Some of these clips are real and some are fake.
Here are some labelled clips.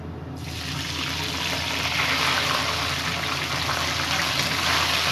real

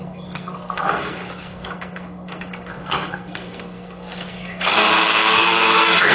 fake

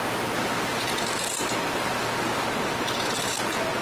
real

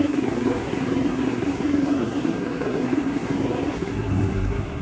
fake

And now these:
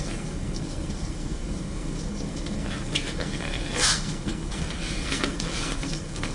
fake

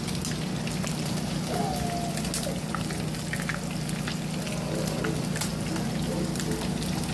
real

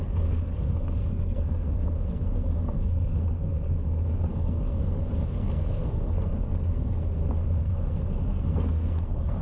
fake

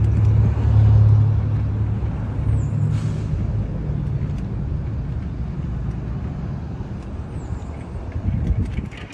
real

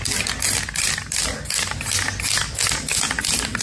real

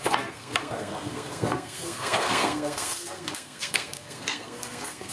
fake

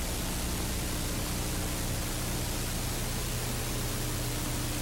real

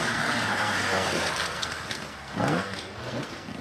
fake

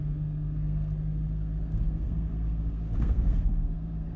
fake